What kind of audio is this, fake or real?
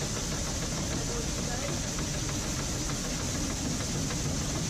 real